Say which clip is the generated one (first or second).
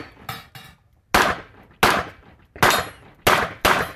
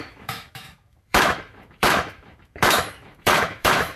second